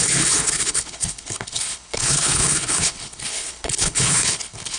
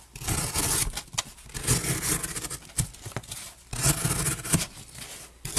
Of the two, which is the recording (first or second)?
second